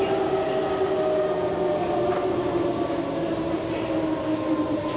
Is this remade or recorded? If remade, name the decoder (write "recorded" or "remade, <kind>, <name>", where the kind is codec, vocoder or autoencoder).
recorded